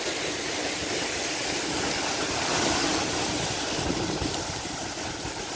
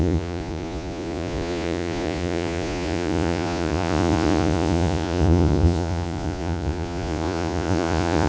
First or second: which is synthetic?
second